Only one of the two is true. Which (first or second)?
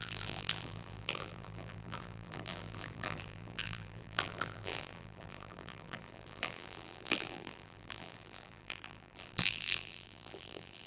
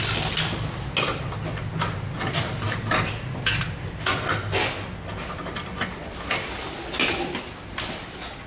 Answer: second